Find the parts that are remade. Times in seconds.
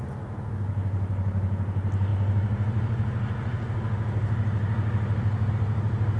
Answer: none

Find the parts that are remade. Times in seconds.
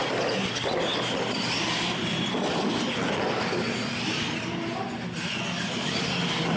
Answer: none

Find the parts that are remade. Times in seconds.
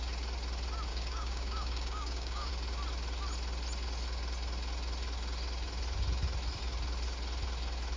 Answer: 0.9-2.5 (codec, DAC)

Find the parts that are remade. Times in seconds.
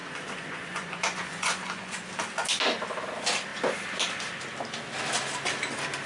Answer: 0.0-2.1 (vocoder, Vocos)